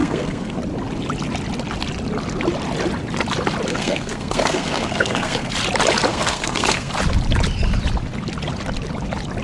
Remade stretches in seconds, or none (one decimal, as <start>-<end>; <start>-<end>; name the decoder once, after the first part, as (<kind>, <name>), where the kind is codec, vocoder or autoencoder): 0.0-0.6 (codec, SNAC); 3.7-5.5; 6.1-6.9